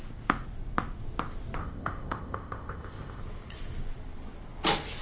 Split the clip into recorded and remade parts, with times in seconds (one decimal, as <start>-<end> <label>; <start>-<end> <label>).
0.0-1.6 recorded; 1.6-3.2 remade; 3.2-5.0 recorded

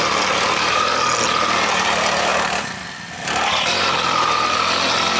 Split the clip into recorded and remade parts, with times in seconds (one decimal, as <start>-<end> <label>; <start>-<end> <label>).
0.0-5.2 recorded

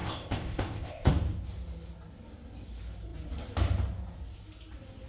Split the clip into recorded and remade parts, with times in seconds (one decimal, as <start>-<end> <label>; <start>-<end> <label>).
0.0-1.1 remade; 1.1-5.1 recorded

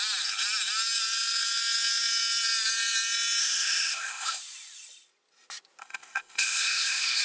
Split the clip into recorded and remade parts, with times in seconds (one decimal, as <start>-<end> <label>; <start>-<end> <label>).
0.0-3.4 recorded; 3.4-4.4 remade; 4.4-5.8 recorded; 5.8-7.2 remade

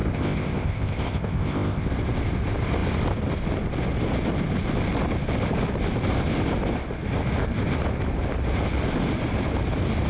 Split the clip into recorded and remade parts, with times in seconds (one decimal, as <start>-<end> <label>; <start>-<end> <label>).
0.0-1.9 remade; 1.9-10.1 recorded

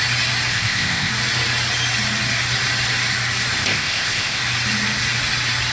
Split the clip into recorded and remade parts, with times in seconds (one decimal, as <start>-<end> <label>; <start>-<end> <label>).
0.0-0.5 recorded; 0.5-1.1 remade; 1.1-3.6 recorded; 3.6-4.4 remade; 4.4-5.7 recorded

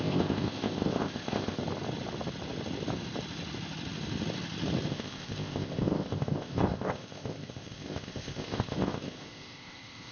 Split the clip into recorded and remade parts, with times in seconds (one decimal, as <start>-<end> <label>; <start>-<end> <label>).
0.0-1.6 remade; 1.6-4.9 recorded; 4.9-10.1 remade

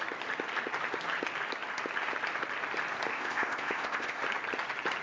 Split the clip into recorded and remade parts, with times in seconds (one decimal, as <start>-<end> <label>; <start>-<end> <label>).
0.0-3.1 recorded; 3.1-4.2 remade; 4.2-5.0 recorded